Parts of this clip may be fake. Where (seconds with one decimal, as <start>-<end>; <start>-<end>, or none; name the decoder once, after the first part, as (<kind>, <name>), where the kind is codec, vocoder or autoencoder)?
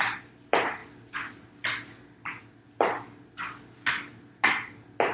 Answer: none